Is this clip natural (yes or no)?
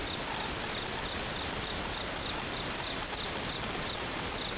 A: yes